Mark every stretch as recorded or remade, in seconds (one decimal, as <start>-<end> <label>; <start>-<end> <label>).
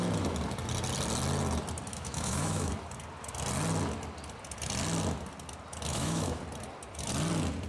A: 0.0-1.9 recorded; 1.9-2.7 remade; 2.7-5.9 recorded; 5.9-6.4 remade; 6.4-7.7 recorded